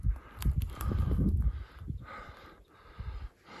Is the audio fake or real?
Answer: fake